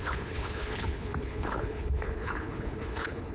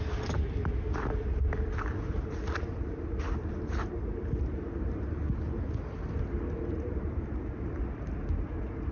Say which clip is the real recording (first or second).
second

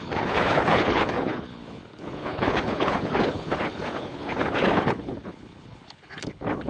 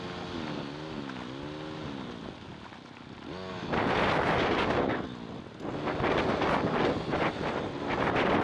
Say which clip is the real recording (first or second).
second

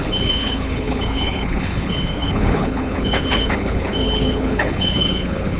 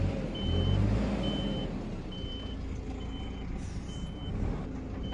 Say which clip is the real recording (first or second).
second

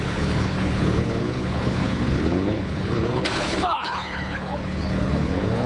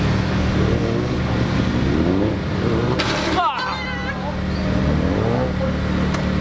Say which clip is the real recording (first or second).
second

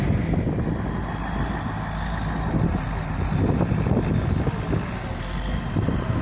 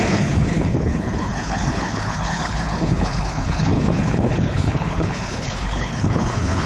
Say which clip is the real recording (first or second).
first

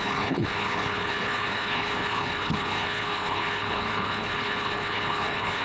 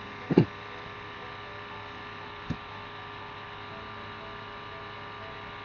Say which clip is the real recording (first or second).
second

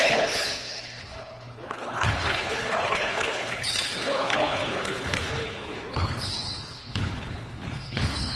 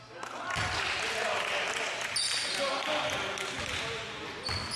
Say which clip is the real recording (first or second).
second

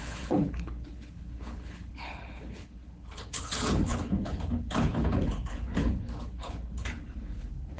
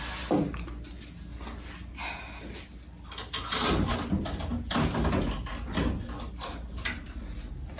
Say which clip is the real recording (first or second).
second